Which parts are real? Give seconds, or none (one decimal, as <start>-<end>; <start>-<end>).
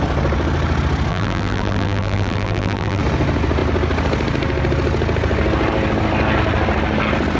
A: 0.0-1.1; 3.0-7.4